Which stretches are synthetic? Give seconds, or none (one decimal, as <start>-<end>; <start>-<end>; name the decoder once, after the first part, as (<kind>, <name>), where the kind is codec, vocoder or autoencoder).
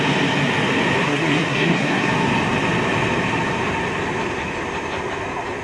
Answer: 1.0-2.1 (codec, SNAC)